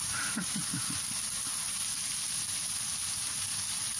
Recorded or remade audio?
recorded